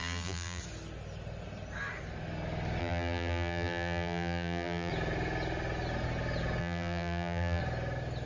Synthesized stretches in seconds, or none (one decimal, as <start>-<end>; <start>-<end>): 0.0-0.6; 2.8-4.9; 6.6-7.6